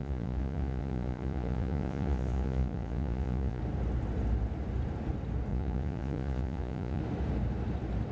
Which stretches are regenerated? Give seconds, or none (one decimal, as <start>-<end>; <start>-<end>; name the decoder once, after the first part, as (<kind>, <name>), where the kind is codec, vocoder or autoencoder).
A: 0.0-3.6 (vocoder, Vocos); 5.5-7.0